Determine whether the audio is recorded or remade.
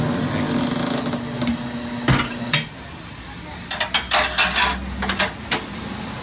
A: recorded